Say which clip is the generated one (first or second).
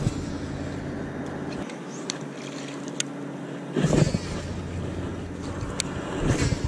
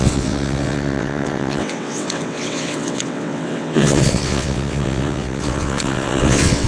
second